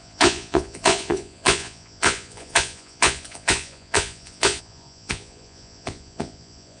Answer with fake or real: fake